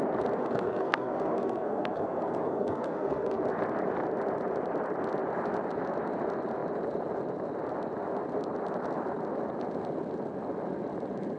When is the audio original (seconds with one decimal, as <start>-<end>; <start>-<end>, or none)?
0.0-0.4; 3.4-11.4